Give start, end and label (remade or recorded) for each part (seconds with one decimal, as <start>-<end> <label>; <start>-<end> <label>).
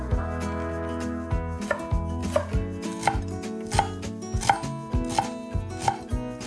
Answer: 0.0-6.5 recorded